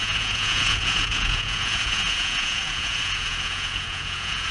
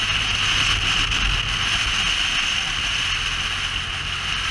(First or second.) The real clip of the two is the second